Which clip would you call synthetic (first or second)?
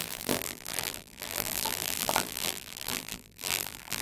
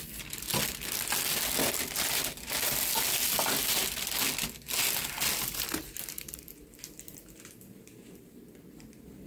first